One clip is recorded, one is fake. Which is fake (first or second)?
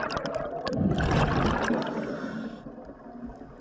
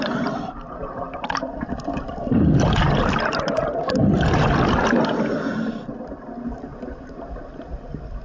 second